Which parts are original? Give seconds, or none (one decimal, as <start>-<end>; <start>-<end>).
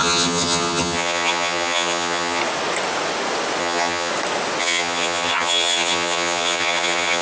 2.4-3.6; 4.1-4.6